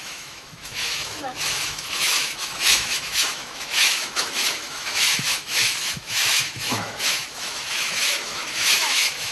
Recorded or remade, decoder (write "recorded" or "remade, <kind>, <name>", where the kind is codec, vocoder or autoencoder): remade, autoencoder, DAC-VAE